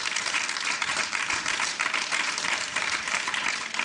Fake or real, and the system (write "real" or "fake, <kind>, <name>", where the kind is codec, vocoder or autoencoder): fake, vocoder, BigVGAN v2